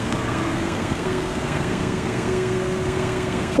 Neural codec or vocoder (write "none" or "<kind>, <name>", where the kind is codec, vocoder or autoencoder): codec, SNAC